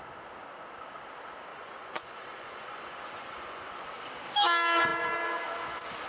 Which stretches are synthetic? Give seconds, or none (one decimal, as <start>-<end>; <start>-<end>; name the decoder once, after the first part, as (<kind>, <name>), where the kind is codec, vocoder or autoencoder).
1.5-3.8 (vocoder, Vocos)